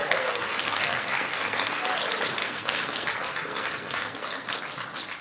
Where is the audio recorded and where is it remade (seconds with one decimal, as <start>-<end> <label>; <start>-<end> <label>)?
0.0-1.8 remade; 1.8-2.4 recorded; 2.4-4.6 remade; 4.6-5.2 recorded